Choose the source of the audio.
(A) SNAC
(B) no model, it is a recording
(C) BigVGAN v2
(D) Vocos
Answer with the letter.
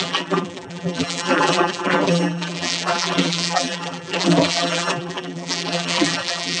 C